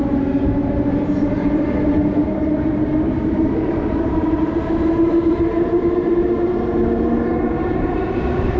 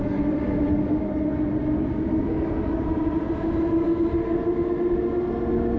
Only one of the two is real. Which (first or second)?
second